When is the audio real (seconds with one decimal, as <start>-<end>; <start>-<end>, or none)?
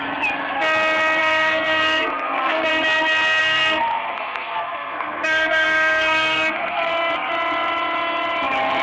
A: 0.0-1.2; 2.7-3.4; 6.9-8.8